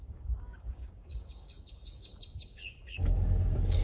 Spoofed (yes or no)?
yes